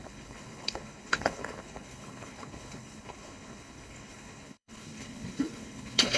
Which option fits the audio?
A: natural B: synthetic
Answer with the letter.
B